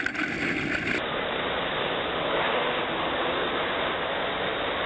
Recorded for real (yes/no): yes